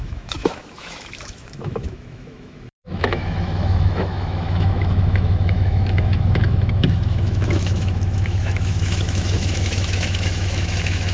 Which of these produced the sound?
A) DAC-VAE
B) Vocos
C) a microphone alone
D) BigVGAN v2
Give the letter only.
A